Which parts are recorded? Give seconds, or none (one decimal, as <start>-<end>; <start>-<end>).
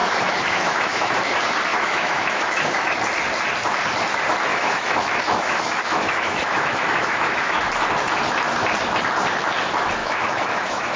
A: 1.1-1.7; 3.0-4.5; 7.6-10.0